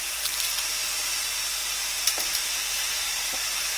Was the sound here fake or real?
fake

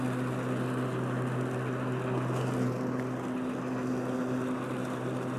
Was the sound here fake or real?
real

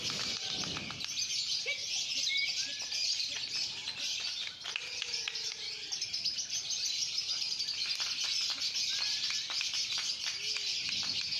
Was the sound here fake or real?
real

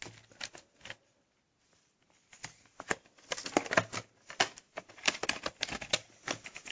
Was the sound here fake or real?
real